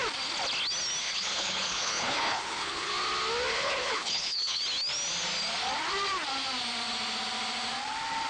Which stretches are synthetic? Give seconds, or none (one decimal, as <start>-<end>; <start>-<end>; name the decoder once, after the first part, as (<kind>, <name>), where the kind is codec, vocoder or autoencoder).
1.0-2.9 (codec, HILCodec); 3.5-4.6